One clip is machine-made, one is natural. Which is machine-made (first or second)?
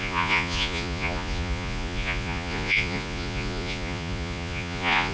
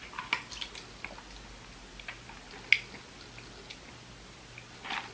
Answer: first